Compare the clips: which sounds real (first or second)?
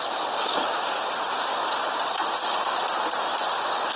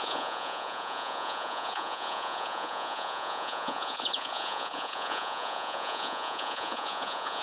first